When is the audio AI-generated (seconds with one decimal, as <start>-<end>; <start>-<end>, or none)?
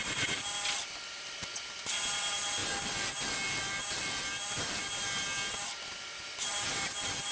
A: none